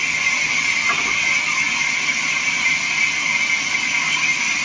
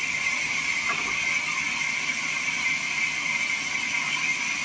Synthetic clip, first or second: second